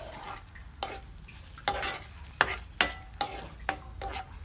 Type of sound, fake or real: real